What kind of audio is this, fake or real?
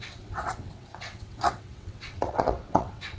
fake